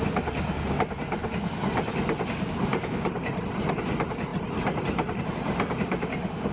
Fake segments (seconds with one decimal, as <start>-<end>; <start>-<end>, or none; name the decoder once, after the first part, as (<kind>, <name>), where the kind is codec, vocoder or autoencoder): none